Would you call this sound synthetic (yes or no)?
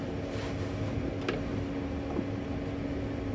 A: no